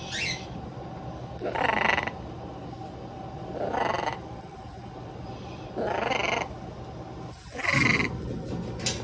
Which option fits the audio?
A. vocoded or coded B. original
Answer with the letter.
B